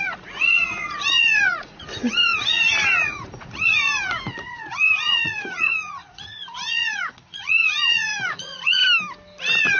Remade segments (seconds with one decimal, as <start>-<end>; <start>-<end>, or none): 0.0-8.8; 9.4-9.8